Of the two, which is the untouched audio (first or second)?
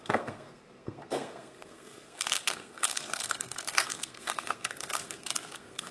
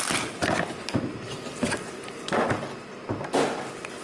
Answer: second